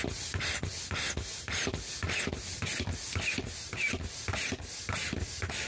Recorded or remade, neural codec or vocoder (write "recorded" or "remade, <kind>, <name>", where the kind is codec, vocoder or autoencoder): recorded